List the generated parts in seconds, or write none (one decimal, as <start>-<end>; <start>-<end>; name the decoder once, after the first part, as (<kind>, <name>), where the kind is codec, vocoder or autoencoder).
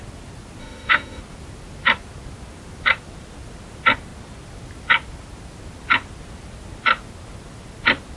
0.6-1.2 (autoencoder, DAC-VAE)